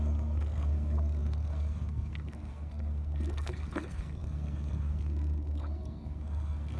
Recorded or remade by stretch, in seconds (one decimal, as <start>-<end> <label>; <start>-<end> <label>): 0.0-6.8 remade